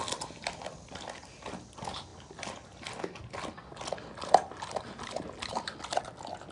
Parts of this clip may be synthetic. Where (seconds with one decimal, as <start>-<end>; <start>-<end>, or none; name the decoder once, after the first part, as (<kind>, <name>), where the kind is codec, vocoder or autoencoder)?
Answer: none